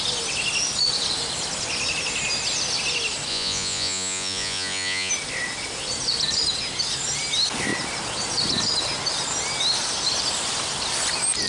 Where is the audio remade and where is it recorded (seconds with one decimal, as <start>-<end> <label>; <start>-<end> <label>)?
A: 0.0-3.3 recorded; 3.3-5.1 remade; 5.1-11.5 recorded